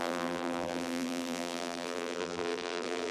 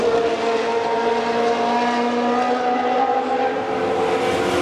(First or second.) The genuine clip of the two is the second